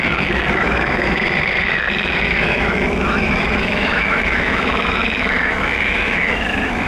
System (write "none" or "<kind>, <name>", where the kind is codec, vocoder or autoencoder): autoencoder, DAC-VAE